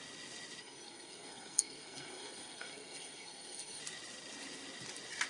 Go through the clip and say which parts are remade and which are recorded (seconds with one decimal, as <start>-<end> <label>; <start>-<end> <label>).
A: 0.0-0.6 recorded; 0.6-3.8 remade; 3.8-5.3 recorded